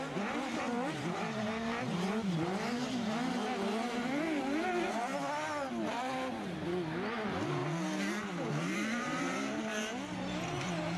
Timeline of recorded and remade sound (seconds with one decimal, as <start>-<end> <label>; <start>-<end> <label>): 0.0-5.1 remade; 5.1-5.9 recorded; 5.9-7.6 remade; 7.6-8.5 recorded; 8.5-11.0 remade